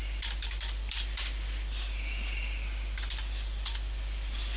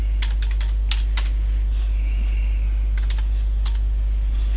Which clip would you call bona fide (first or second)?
second